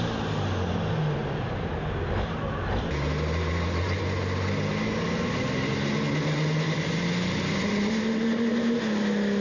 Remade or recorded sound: recorded